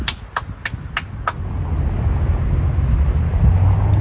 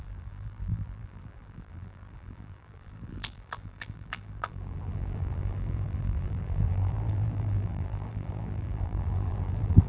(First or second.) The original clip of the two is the first